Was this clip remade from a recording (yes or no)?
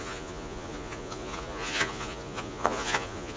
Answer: yes